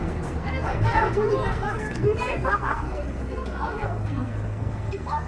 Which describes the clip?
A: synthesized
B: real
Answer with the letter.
A